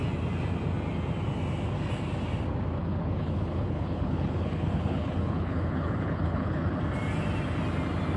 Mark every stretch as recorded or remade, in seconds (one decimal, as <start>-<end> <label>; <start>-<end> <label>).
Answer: 0.0-2.8 recorded; 2.8-6.8 remade; 6.8-8.2 recorded